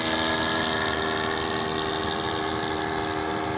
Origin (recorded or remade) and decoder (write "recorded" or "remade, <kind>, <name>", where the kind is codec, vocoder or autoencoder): remade, vocoder, BigVGAN v2